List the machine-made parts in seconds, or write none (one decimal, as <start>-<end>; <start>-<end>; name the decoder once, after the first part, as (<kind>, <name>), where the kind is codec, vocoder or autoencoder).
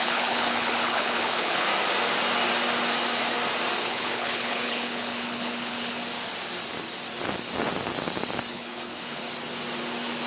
0.0-1.7 (codec, HILCodec); 3.8-6.0; 8.5-9.2